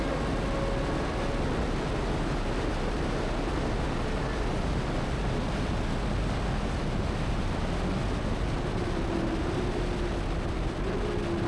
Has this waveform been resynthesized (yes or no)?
no